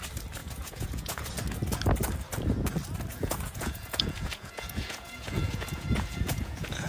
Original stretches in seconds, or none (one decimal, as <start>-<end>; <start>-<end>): 0.0-0.4; 1.3-3.1